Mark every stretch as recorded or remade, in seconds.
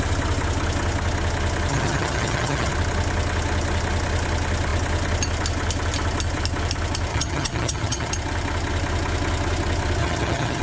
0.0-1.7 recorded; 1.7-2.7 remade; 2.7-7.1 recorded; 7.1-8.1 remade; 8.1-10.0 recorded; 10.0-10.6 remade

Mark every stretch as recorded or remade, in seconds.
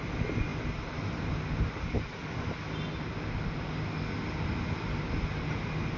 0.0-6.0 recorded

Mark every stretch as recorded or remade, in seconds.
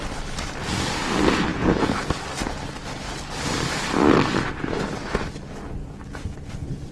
0.0-1.5 recorded; 1.5-2.1 remade; 2.1-5.8 recorded; 5.8-6.5 remade; 6.5-6.9 recorded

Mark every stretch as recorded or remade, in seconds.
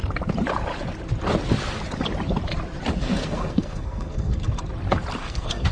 0.0-3.0 recorded; 3.0-4.6 remade; 4.6-5.2 recorded; 5.2-5.7 remade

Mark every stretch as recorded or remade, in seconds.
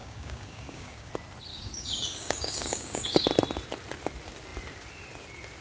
0.0-1.1 remade; 1.1-1.5 recorded; 1.5-3.3 remade; 3.3-5.6 recorded